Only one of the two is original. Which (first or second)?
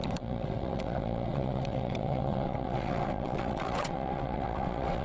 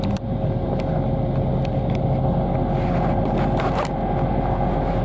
second